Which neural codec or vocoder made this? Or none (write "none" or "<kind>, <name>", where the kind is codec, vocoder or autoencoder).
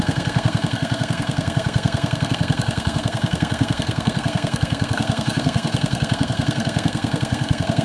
codec, SNAC